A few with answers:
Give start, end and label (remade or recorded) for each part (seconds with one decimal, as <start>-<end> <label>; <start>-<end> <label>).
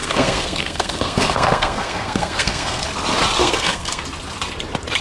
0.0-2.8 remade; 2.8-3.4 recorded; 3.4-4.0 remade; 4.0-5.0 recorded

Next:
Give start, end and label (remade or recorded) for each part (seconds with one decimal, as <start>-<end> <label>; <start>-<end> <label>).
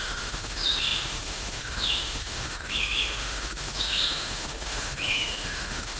0.0-6.0 remade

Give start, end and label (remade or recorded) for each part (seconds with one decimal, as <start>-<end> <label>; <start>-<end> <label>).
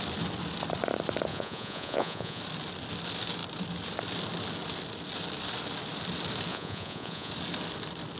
0.0-1.3 recorded; 1.3-2.4 remade; 2.4-6.5 recorded; 6.5-7.3 remade; 7.3-8.2 recorded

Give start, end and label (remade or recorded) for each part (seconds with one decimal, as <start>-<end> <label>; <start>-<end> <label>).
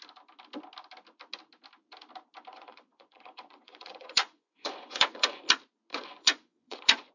0.0-2.5 recorded; 2.5-5.4 remade; 5.4-5.9 recorded; 5.9-7.1 remade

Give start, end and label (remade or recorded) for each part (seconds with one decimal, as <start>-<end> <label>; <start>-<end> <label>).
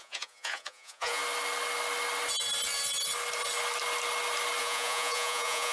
0.0-1.2 remade; 1.2-4.6 recorded; 4.6-5.7 remade